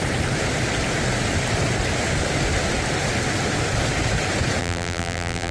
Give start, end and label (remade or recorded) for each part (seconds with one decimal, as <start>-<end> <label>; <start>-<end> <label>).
0.0-4.6 recorded; 4.6-5.5 remade